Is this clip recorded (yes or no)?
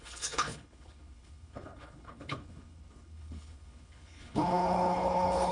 no